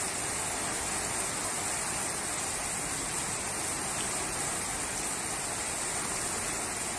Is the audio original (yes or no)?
yes